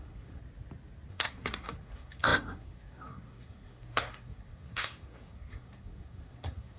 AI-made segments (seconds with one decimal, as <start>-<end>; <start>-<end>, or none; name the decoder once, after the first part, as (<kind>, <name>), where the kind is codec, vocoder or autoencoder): 0.0-0.4 (codec, SNAC); 1.1-6.8